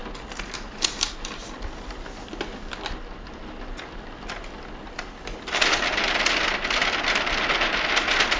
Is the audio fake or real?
real